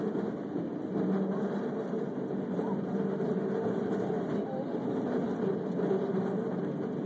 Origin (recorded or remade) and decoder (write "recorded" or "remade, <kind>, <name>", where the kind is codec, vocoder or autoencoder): recorded